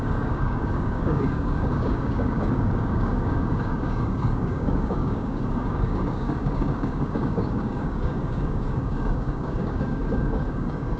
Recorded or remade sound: remade